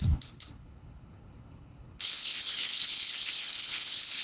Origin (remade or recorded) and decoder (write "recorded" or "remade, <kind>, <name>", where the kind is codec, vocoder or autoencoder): remade, codec, HILCodec